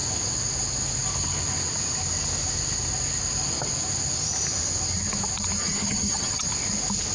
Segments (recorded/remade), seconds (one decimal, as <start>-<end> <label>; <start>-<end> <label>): 0.0-5.6 recorded; 5.6-6.5 remade; 6.5-7.1 recorded